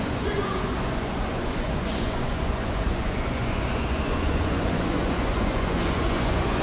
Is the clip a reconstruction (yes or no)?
yes